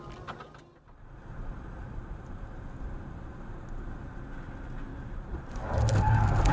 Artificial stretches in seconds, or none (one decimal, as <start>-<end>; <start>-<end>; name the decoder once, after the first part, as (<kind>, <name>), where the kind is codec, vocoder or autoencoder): 1.8-4.0 (vocoder, BigVGAN v2); 4.9-5.4